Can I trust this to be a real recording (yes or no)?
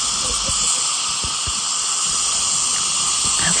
yes